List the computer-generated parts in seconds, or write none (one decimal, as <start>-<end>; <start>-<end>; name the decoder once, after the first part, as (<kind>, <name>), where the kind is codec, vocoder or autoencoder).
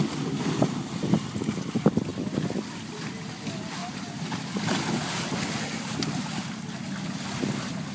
none